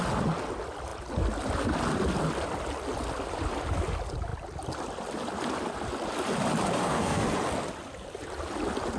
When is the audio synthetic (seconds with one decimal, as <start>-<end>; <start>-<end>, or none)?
6.8-7.3